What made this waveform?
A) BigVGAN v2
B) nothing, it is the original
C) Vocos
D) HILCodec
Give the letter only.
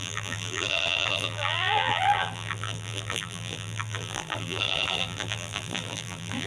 A